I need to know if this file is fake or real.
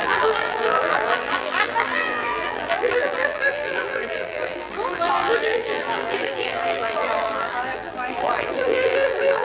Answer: fake